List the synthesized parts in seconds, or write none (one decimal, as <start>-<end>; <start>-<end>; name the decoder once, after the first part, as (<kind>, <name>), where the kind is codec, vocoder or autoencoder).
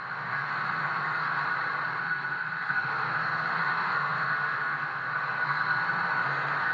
0.0-1.4 (codec, SNAC); 2.0-6.7